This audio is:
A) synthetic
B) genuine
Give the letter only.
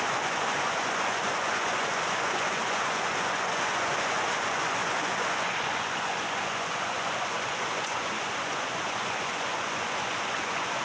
A